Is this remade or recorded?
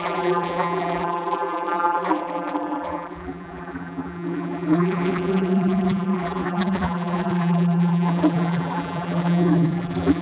remade